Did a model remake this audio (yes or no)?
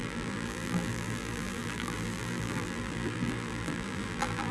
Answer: yes